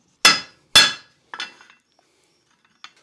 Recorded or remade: recorded